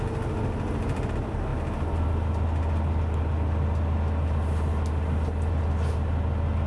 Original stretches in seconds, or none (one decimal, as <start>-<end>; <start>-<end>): 0.0-6.7